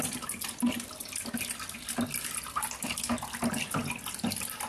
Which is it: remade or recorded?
recorded